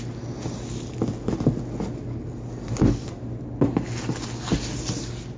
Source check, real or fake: real